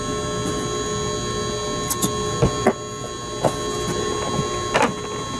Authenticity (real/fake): real